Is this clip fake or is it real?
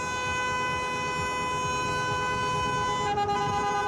real